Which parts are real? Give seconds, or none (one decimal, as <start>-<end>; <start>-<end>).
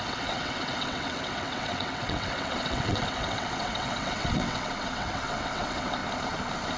6.0-6.8